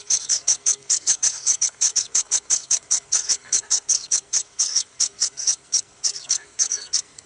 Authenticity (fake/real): fake